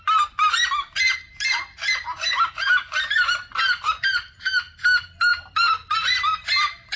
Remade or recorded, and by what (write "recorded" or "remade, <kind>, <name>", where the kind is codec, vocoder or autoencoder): remade, vocoder, BigVGAN v2